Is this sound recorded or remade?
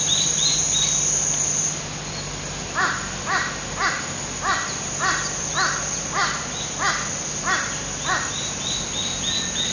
recorded